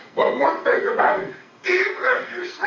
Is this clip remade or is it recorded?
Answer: remade